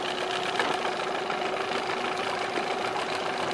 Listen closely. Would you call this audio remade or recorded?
recorded